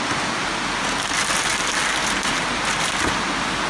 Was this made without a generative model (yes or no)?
yes